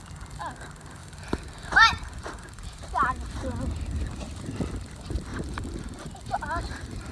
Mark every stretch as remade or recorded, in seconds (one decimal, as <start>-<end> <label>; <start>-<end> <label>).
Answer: 0.0-1.0 recorded; 1.0-2.9 remade; 2.9-5.3 recorded; 5.3-6.0 remade; 6.0-7.1 recorded